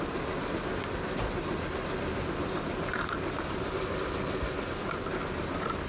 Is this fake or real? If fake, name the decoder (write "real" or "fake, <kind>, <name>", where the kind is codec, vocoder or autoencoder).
real